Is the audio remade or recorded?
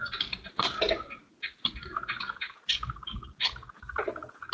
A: recorded